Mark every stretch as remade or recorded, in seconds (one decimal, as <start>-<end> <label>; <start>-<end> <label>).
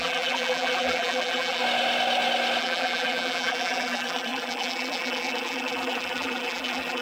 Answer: 0.0-1.6 remade; 1.6-2.6 recorded; 2.6-7.0 remade